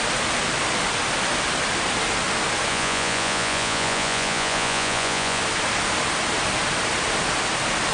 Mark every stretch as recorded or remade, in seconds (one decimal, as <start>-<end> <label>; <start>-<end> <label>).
0.0-2.7 recorded; 2.7-5.4 remade; 5.4-7.9 recorded